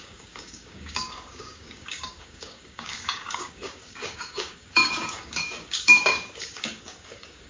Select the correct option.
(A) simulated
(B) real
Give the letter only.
A